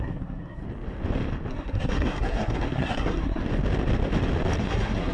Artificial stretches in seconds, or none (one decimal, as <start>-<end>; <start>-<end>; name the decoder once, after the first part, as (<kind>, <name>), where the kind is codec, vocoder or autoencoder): 0.0-0.6 (codec, SNAC); 1.5-3.4; 4.6-5.1